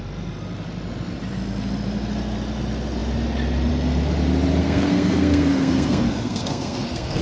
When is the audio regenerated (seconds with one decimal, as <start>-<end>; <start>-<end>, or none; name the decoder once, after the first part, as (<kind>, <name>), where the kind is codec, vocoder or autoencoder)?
4.6-7.2 (codec, SNAC)